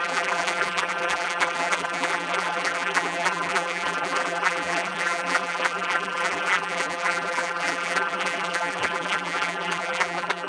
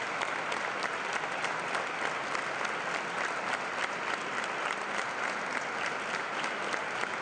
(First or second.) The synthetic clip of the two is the first